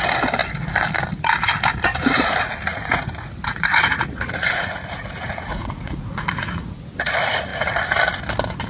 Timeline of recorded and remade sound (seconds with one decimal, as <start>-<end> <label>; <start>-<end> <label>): 0.0-2.7 recorded; 2.7-6.8 remade; 6.8-8.7 recorded